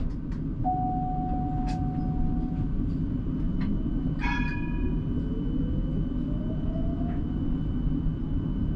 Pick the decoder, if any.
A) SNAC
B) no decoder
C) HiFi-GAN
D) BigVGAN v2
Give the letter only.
B